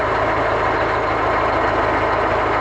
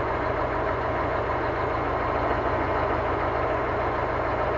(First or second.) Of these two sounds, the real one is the first